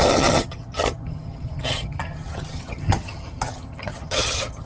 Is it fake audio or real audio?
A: fake